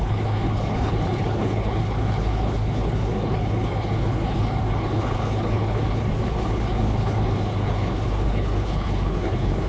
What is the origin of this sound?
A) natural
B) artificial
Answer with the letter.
B